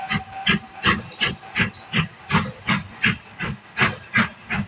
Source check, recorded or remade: recorded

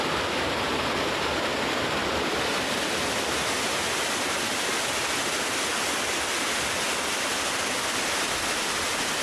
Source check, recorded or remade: recorded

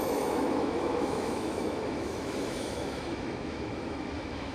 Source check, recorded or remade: remade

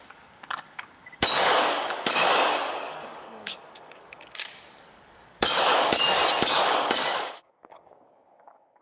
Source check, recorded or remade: remade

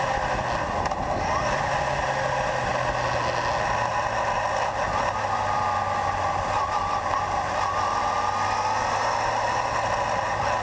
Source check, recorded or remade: recorded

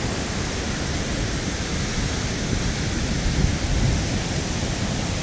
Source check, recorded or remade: recorded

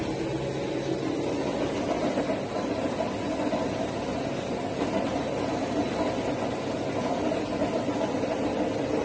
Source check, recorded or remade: recorded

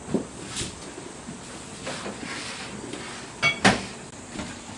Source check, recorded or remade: recorded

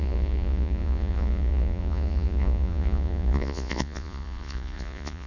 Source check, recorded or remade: remade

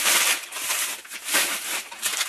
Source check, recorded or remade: remade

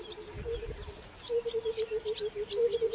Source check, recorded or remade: recorded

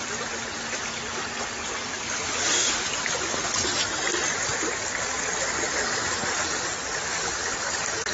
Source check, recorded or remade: recorded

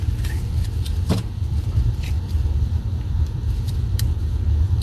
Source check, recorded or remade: remade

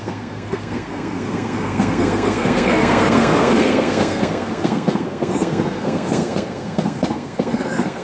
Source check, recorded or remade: remade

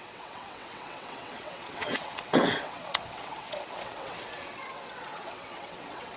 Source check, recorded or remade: remade